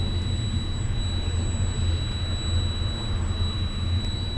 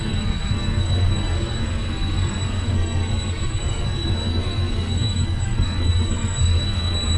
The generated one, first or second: second